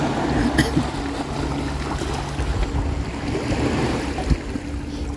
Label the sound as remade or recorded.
recorded